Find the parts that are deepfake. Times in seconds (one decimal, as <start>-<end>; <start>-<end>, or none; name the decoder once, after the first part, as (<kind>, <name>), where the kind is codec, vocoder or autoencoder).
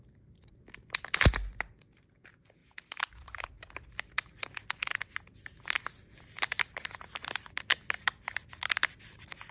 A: none